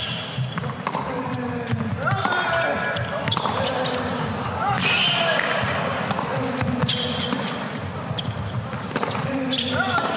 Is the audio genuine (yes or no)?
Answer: yes